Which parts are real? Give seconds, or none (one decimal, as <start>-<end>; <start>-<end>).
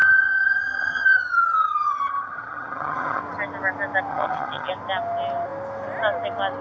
3.2-4.1; 4.7-6.6